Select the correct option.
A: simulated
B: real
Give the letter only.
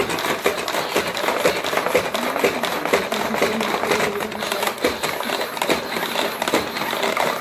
B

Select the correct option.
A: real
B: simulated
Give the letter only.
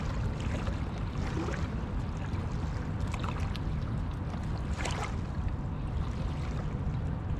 A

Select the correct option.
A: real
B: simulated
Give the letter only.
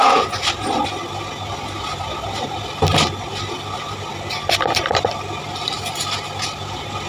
A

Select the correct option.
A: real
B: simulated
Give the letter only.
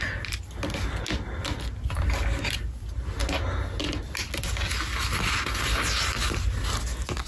A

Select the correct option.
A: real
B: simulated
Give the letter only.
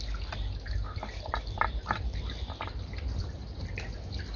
A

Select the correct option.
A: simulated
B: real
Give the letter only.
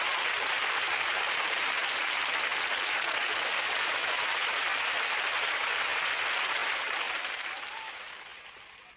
A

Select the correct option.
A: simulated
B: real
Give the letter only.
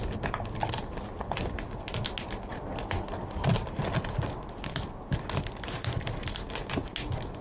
B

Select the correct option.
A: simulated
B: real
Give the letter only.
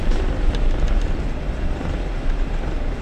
A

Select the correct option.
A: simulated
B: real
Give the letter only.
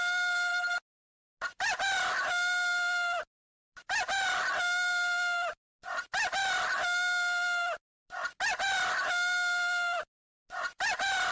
B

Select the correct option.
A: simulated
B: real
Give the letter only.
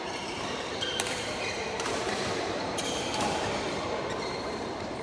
A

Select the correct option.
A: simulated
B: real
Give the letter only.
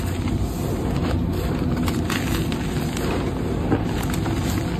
B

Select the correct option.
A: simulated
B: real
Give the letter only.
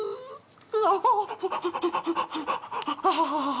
B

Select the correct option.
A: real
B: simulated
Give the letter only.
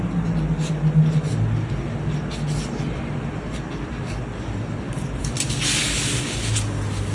A